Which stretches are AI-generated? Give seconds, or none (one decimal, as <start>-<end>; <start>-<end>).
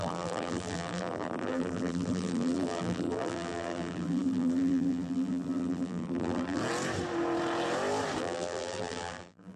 0.0-6.6; 8.2-9.6